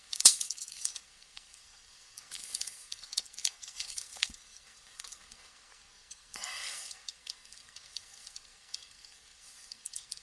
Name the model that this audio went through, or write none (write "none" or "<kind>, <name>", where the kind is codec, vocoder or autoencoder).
codec, SNAC